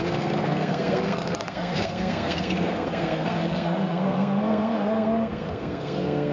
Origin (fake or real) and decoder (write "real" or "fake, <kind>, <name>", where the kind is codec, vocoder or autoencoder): fake, codec, SNAC